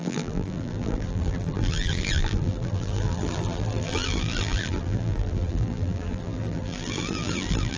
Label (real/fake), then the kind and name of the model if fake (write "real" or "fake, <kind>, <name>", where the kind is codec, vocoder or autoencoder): fake, vocoder, BigVGAN v2